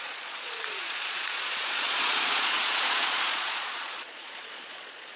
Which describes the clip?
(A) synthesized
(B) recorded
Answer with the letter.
A